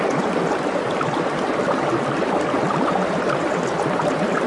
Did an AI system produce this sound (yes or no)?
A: no